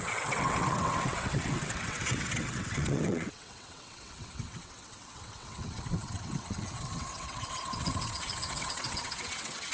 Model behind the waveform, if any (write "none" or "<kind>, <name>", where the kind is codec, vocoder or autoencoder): vocoder, WaveNeXt